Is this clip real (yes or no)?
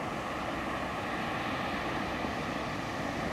yes